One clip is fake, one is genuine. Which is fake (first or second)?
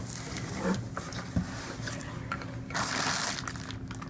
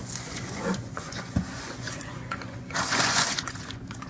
second